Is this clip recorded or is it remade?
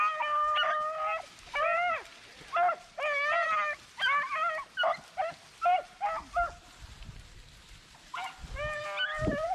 recorded